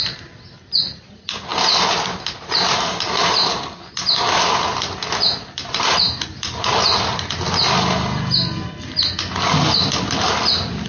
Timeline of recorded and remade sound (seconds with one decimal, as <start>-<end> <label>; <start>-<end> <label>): 0.0-10.9 recorded